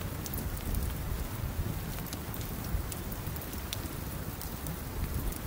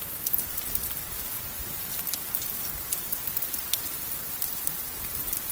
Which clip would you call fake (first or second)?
first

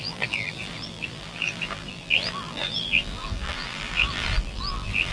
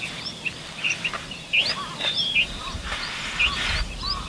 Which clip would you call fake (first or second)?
first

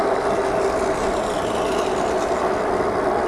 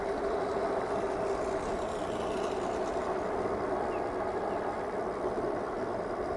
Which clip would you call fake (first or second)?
second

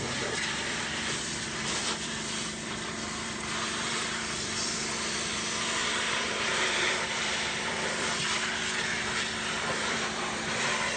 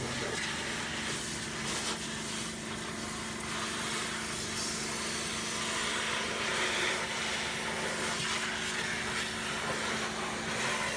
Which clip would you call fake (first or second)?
first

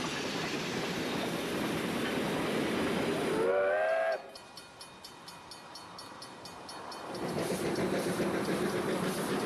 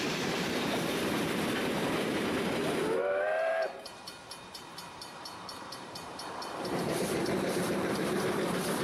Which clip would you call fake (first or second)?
second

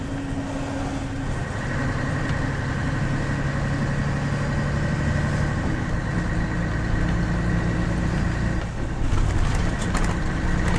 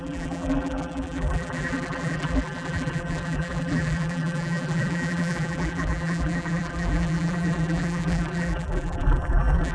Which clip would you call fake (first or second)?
second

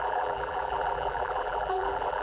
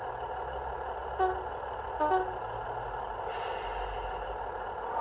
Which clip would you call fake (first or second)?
first